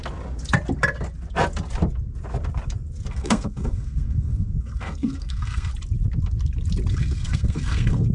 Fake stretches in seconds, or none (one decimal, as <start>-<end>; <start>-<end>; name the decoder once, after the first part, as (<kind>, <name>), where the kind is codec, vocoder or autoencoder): 3.1-5.7 (codec, SNAC); 6.9-8.1